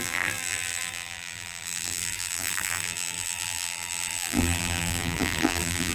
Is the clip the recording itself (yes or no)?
no